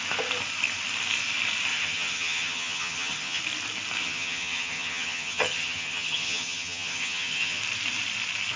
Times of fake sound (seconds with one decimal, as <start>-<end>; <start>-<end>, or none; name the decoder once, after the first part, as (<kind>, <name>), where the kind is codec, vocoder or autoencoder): 1.7-3.4 (vocoder, HiFi-GAN); 4.0-7.6